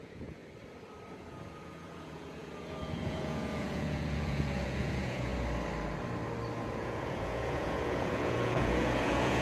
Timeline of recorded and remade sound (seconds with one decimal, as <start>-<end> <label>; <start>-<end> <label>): 0.0-0.4 remade; 0.4-1.1 recorded; 1.1-5.3 remade; 5.3-6.6 recorded; 6.6-9.4 remade